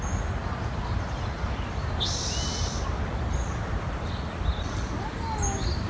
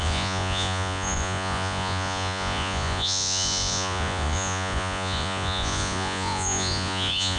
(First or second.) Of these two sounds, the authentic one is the first